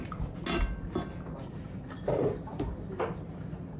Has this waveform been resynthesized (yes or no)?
no